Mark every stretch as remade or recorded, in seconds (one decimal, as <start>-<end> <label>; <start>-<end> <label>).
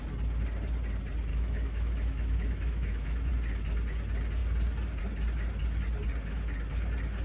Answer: 0.0-1.3 recorded; 1.3-3.3 remade; 3.3-7.2 recorded